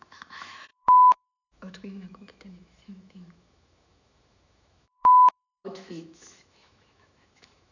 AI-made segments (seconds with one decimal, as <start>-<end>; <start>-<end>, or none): 0.0-7.7